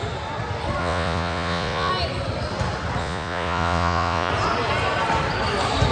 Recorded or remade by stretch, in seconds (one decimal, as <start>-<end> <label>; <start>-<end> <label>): 0.0-0.8 recorded; 0.8-1.9 remade; 1.9-3.0 recorded; 3.0-4.3 remade; 4.3-5.9 recorded